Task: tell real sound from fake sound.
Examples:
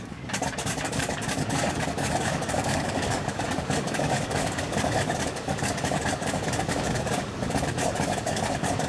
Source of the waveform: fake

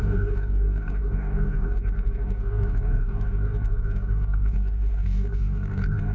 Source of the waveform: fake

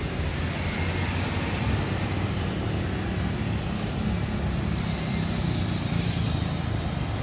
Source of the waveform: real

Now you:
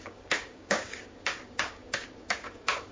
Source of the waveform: fake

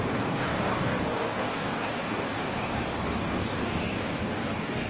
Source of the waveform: fake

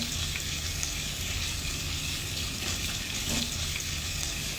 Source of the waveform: fake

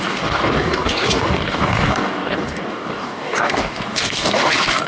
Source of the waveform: fake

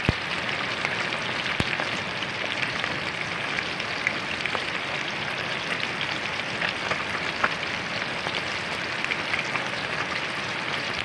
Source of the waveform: real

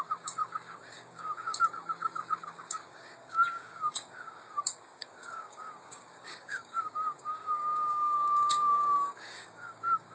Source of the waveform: fake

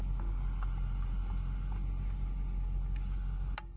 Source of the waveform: real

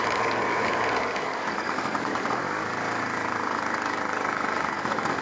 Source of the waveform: fake